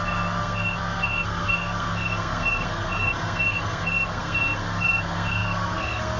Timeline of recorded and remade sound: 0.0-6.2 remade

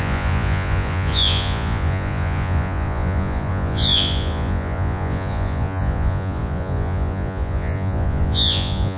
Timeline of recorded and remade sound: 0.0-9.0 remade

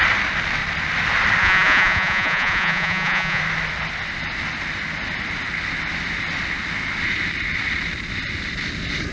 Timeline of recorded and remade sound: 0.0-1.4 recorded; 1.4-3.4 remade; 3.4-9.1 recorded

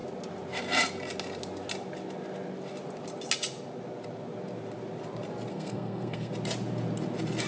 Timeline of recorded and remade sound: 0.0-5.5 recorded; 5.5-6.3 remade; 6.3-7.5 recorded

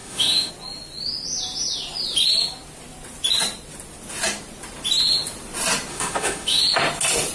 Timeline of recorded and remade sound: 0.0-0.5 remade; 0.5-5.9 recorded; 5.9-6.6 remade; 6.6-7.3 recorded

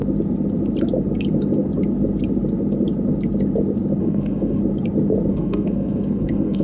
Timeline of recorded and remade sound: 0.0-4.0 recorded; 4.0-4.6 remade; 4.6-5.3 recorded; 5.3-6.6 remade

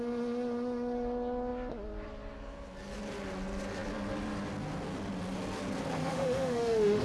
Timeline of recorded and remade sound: 0.0-6.0 recorded; 6.0-7.0 remade

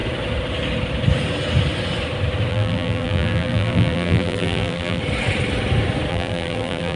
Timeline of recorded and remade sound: 0.0-2.5 recorded; 2.5-5.0 remade; 5.0-6.1 recorded; 6.1-7.0 remade